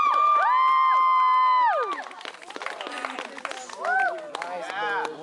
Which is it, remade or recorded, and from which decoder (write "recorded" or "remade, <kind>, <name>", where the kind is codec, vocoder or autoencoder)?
recorded